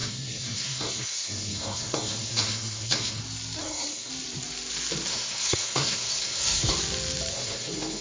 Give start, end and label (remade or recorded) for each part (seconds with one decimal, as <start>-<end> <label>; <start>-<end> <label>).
0.0-3.2 remade; 3.2-3.6 recorded; 3.6-4.1 remade; 4.1-5.1 recorded; 5.1-6.7 remade; 6.7-7.3 recorded; 7.3-8.0 remade